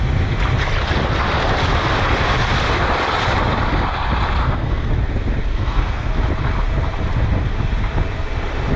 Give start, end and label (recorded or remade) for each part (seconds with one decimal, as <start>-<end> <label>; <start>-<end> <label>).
0.0-4.4 recorded; 4.4-4.9 remade; 4.9-5.5 recorded; 5.5-6.1 remade; 6.1-8.8 recorded